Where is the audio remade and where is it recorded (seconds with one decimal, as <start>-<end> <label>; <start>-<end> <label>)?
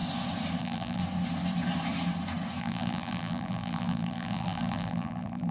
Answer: 0.0-0.6 recorded; 0.6-1.0 remade; 1.0-2.6 recorded; 2.6-5.5 remade